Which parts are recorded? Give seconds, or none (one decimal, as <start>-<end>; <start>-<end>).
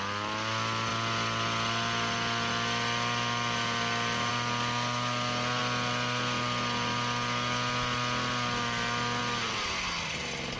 0.0-10.6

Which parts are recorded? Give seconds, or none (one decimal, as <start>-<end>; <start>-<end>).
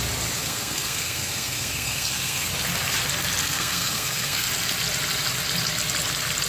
0.0-0.4; 2.5-3.4; 4.5-6.5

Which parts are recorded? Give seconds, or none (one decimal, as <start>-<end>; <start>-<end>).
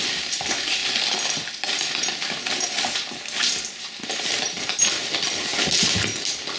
0.0-6.6